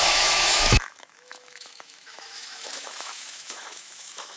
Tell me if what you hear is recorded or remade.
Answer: remade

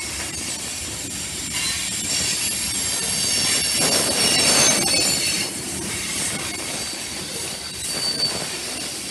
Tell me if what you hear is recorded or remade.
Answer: recorded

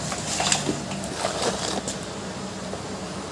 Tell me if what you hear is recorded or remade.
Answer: recorded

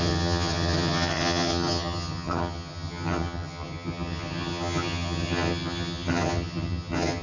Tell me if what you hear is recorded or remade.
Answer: remade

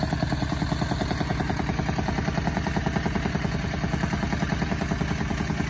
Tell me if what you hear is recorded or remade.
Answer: recorded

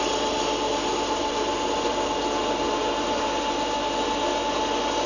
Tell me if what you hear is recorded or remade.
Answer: recorded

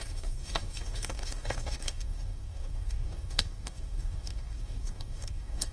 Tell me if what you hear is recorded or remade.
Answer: remade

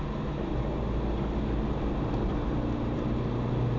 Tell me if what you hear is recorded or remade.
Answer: recorded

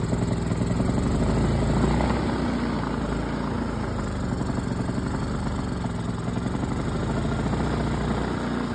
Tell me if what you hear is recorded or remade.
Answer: recorded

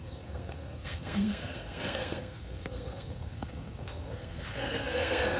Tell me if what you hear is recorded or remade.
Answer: remade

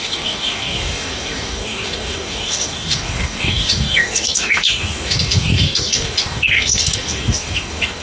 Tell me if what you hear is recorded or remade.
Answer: remade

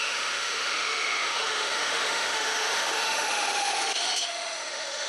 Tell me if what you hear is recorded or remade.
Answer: remade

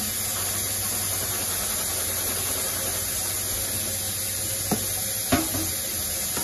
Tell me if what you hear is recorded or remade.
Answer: recorded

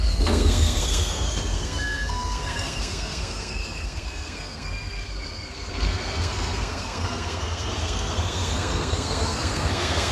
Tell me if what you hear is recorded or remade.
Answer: remade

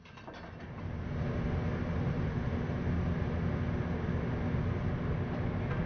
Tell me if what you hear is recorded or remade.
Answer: recorded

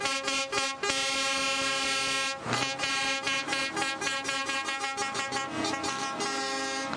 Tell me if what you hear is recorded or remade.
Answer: recorded